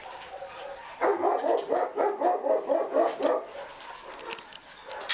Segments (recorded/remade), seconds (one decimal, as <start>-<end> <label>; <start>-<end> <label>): 0.0-1.1 remade; 1.1-4.1 recorded; 4.1-5.1 remade